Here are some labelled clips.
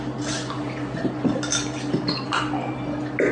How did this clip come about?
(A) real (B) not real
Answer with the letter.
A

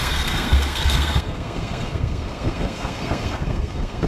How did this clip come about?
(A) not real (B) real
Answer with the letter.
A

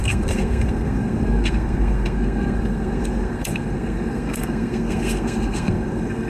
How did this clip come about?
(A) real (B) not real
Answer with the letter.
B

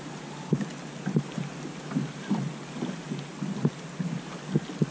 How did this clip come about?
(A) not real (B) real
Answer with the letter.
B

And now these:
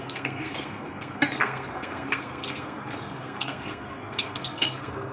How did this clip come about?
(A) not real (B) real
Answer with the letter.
A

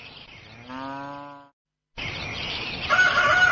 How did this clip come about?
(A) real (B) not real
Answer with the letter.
A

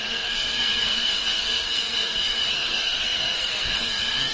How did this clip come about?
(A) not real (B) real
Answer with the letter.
A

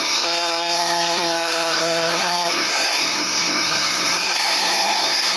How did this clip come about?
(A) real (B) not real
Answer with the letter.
B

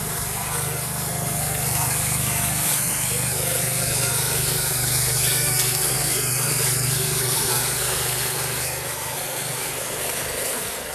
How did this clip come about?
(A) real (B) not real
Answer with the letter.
B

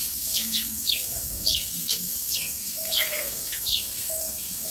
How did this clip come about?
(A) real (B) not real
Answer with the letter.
B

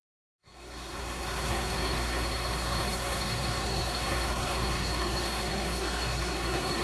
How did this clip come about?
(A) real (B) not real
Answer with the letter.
B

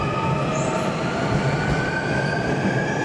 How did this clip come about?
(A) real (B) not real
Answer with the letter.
A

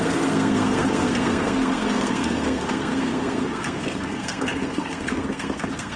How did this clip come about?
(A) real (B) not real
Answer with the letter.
B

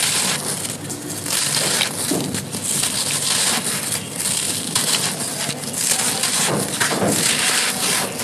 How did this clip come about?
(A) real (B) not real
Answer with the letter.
A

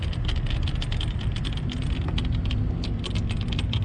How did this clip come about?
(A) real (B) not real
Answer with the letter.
A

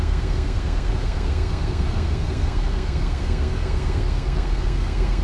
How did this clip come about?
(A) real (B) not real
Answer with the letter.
B